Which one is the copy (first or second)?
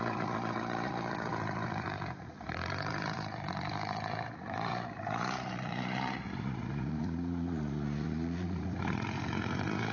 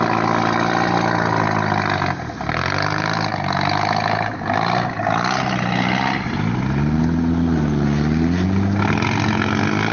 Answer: first